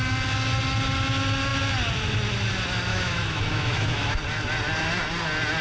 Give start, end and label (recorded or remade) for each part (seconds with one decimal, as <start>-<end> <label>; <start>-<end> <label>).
0.0-2.9 recorded; 2.9-4.2 remade; 4.2-5.6 recorded